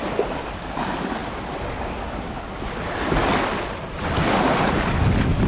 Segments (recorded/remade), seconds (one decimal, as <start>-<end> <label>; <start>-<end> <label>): 0.0-5.5 recorded